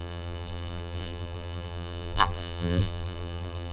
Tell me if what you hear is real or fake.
fake